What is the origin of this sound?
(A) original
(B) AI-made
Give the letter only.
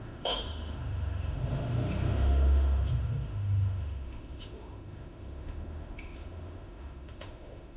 B